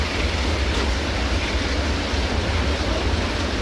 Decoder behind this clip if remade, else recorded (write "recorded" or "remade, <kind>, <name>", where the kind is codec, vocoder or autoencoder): recorded